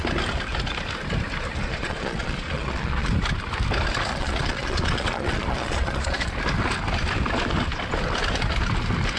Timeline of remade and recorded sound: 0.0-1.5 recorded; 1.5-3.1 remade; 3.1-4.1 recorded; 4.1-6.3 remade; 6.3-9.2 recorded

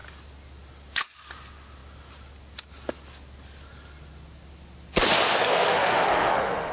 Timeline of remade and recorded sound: 0.0-5.5 recorded; 5.5-6.7 remade

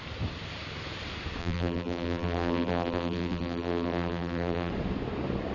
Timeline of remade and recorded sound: 0.0-1.4 recorded; 1.4-4.7 remade; 4.7-5.5 recorded

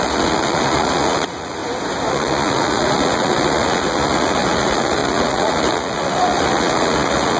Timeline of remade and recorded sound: 0.0-1.6 remade; 1.6-2.1 recorded; 2.1-7.4 remade

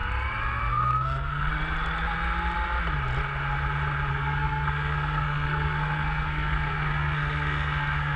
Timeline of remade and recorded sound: 0.0-0.7 recorded; 0.7-1.5 remade; 1.5-4.1 recorded; 4.1-8.2 remade

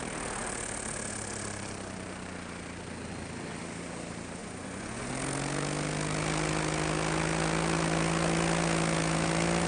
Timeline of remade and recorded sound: 0.0-4.4 recorded; 4.4-5.1 remade; 5.1-9.7 recorded